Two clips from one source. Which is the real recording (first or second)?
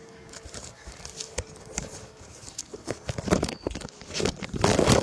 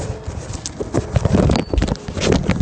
second